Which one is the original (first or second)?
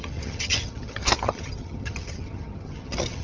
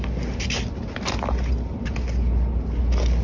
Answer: second